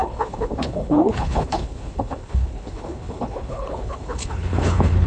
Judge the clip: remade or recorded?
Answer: remade